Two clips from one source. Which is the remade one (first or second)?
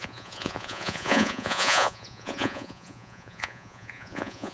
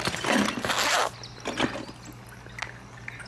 first